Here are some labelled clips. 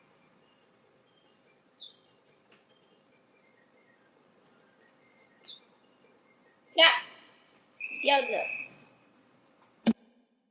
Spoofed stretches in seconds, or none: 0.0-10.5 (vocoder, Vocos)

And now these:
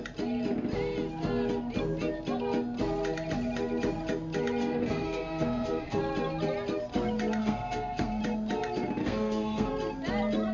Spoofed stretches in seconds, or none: 4.6-6.0 (codec, SNAC); 7.4-8.2; 9.0-9.7

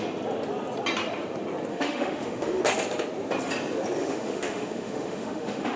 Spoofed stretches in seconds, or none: 1.7-2.6 (autoencoder, DAC-VAE); 4.0-5.8

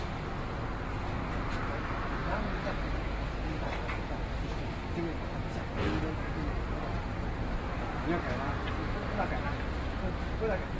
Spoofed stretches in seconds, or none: none

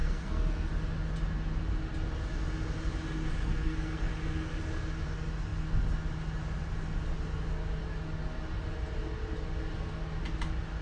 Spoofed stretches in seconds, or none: 0.0-0.7 (codec, SNAC); 3.4-4.1

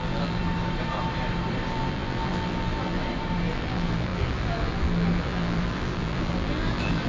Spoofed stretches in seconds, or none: 0.0-0.4 (vocoder, BigVGAN v2); 1.7-3.0; 3.5-7.1

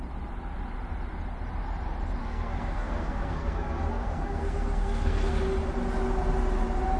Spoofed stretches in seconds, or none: 2.2-5.4 (codec, SNAC)

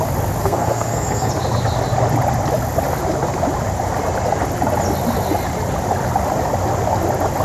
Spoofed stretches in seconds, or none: 0.4-1.3 (codec, SNAC)